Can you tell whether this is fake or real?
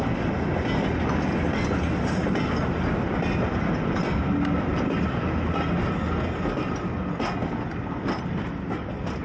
real